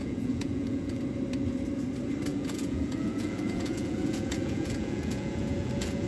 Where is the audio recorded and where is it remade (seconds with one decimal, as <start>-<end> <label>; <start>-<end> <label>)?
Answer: 0.0-1.0 remade; 1.0-2.3 recorded; 2.3-6.1 remade